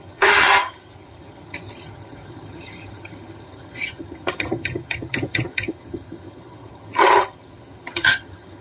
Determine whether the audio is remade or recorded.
remade